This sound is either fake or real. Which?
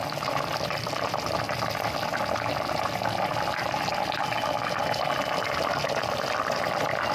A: real